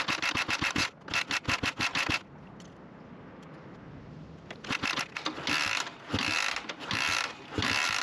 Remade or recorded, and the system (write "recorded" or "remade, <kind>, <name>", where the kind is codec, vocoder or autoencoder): recorded